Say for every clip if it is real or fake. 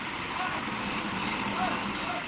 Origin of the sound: real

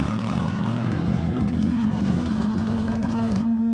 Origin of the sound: fake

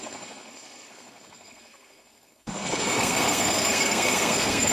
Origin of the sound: fake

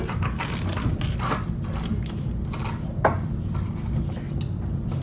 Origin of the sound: real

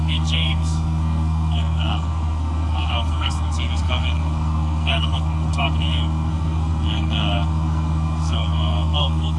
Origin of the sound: fake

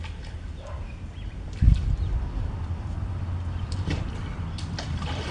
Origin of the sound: real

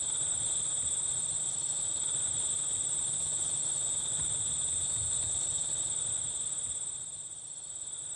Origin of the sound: real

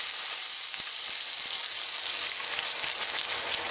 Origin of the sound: real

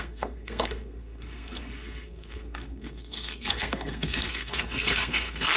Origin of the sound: fake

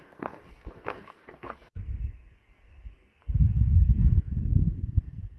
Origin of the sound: fake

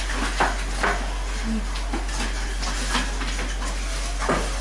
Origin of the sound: real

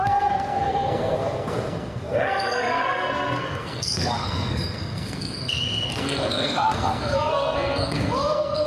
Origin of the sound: fake